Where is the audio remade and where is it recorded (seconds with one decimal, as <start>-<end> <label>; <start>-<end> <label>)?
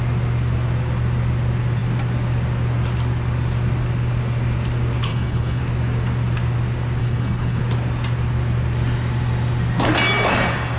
0.0-5.1 recorded; 5.1-5.6 remade; 5.6-7.0 recorded; 7.0-7.6 remade; 7.6-10.8 recorded